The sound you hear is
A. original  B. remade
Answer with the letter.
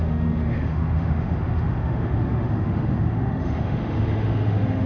B